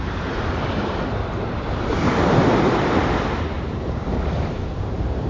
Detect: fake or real fake